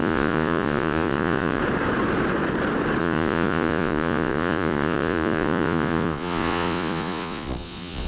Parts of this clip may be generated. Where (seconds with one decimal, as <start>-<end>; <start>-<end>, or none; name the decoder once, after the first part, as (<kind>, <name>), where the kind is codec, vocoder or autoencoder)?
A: 0.0-1.6 (vocoder, Vocos); 3.0-8.1